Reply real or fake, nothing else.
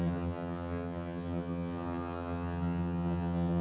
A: fake